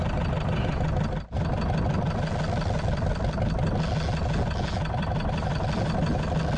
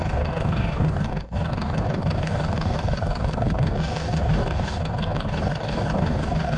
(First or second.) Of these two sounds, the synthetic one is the second